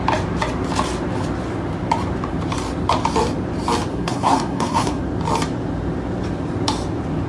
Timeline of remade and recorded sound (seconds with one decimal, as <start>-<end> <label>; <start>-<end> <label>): 0.0-3.9 recorded; 3.9-5.0 remade; 5.0-7.3 recorded